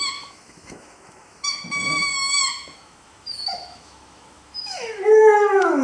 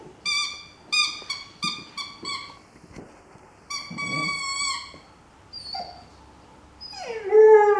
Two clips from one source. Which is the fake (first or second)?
first